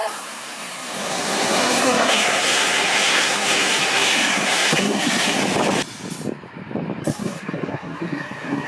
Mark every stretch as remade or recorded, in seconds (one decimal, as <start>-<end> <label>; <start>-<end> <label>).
0.0-5.4 remade; 5.4-7.0 recorded; 7.0-8.7 remade